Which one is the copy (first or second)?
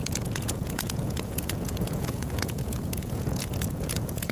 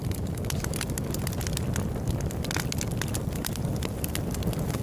first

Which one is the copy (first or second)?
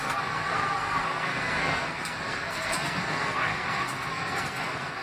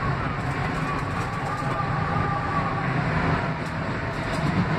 first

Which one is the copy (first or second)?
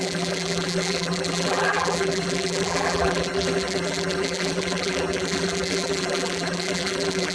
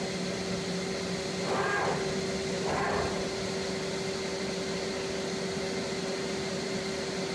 first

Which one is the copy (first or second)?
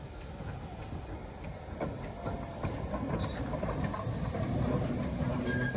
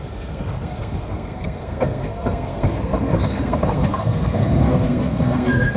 second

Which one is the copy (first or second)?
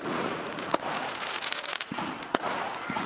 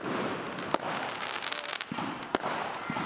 first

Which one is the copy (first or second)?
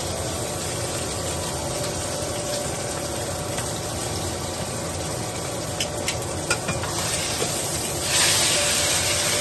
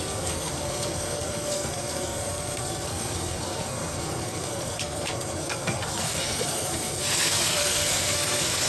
second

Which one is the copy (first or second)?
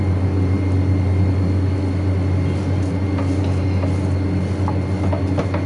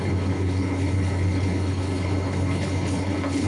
second